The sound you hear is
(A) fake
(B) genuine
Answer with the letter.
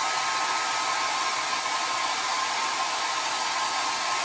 B